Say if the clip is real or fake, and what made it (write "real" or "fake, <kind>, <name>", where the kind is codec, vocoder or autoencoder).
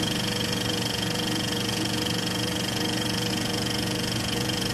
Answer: fake, vocoder, Vocos